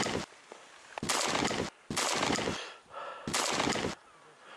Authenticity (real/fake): real